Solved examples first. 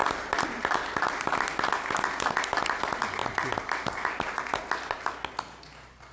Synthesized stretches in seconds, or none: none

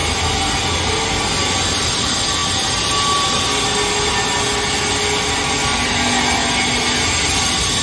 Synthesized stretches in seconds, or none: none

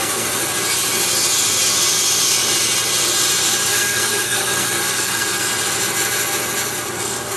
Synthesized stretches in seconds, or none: 0.0-0.4 (codec, SNAC); 3.7-5.5; 7.0-7.4

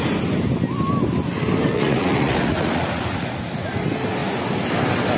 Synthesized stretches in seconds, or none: 1.7-3.3 (vocoder, Vocos)